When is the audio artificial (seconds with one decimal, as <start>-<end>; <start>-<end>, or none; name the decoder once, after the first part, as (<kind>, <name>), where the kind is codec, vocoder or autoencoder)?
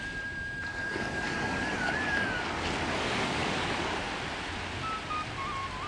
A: 0.7-4.0 (codec, DAC)